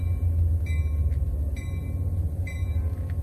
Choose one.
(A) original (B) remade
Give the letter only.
A